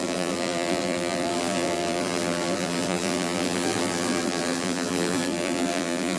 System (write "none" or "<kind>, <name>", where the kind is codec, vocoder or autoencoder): vocoder, BigVGAN v2